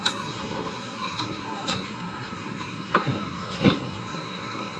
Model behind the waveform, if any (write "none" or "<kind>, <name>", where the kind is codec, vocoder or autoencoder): codec, SNAC